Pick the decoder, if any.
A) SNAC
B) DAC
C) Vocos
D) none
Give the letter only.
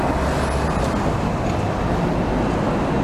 D